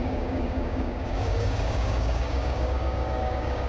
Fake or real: fake